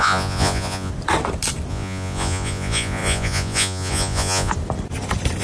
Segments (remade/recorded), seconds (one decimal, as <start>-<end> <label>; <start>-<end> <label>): 0.0-0.9 remade; 0.9-1.7 recorded; 1.7-4.5 remade; 4.5-5.4 recorded